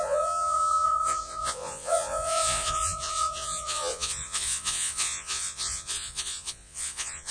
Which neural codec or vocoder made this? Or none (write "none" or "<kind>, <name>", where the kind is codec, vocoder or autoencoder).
vocoder, Vocos